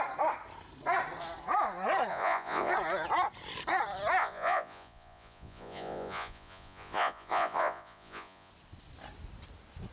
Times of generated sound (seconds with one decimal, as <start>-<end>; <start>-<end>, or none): 2.1-2.7; 4.2-8.5